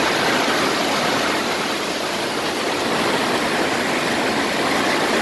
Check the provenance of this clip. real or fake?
real